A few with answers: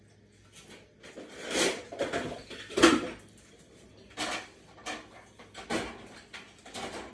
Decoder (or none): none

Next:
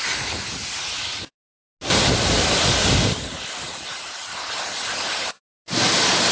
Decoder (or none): none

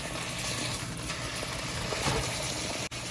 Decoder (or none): none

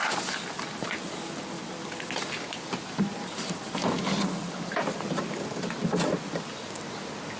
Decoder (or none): none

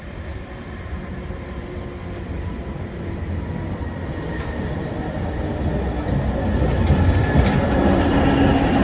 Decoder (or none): none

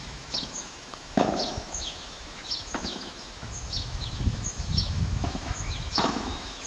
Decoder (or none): autoencoder, DAC-VAE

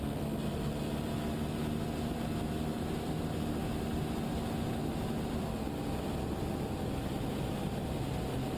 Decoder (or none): none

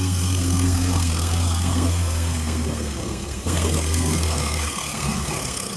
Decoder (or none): codec, SNAC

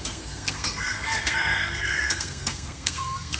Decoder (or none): codec, SNAC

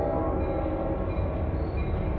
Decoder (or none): none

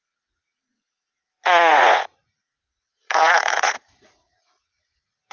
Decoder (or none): vocoder, Vocos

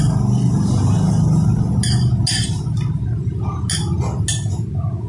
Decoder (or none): none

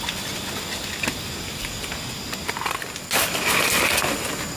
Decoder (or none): none